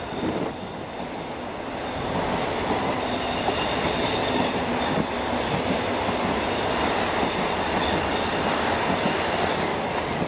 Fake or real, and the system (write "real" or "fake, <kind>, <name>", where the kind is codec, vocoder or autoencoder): real